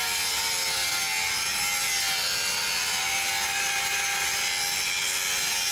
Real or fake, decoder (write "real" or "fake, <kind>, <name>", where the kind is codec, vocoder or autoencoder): real